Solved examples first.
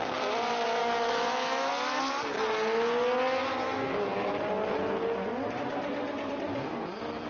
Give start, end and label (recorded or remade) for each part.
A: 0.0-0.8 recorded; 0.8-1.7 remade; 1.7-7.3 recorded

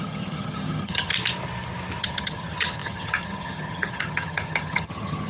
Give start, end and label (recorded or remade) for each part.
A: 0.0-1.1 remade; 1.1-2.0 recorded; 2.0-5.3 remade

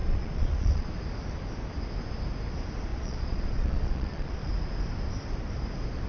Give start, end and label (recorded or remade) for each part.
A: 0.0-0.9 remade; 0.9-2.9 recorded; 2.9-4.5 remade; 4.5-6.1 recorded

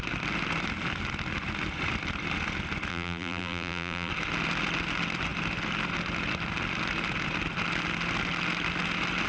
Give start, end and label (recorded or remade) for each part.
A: 0.0-2.9 recorded; 2.9-4.1 remade; 4.1-9.3 recorded

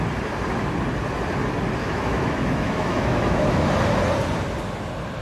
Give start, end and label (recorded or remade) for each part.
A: 0.0-1.8 recorded; 1.8-3.6 remade; 3.6-5.2 recorded

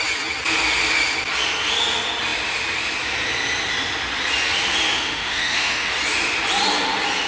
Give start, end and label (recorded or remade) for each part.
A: 0.0-4.9 recorded; 4.9-5.9 remade; 5.9-7.3 recorded